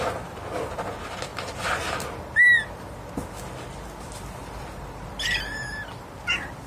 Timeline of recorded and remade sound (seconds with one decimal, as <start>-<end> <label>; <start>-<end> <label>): 0.0-4.4 recorded; 4.4-5.1 remade; 5.1-6.7 recorded